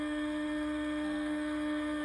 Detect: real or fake fake